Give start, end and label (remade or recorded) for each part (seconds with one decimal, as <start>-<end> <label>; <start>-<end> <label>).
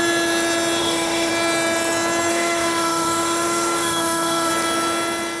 0.0-0.8 recorded; 0.8-1.3 remade; 1.3-2.3 recorded; 2.3-4.5 remade; 4.5-5.4 recorded